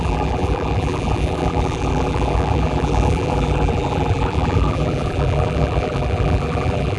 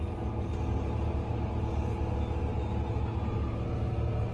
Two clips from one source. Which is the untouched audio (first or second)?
second